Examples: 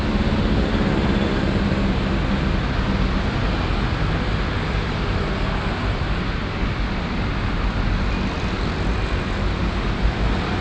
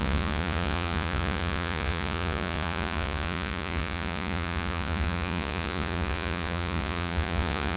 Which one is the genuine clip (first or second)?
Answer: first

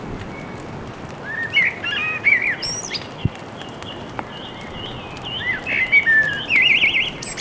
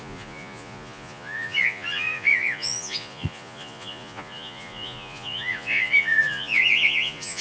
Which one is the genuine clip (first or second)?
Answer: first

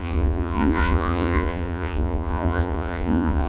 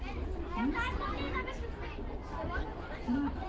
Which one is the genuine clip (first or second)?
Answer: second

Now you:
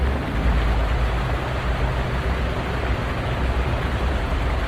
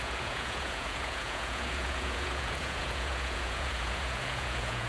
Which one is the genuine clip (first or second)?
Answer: first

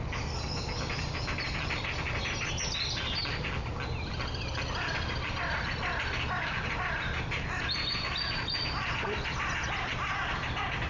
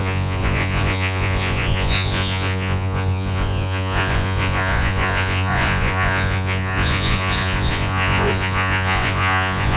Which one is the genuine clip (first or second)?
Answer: first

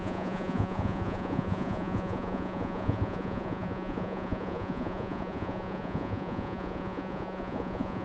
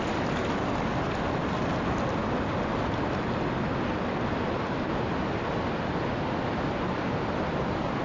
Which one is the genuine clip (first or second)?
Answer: second